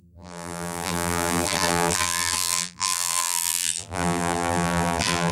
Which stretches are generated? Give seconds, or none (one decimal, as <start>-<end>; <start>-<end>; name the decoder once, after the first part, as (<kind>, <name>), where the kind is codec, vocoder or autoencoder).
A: 0.0-5.3 (vocoder, BigVGAN v2)